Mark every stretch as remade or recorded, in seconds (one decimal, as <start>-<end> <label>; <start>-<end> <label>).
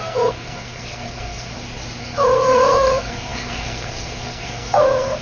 0.0-1.5 remade; 1.5-2.0 recorded; 2.0-5.2 remade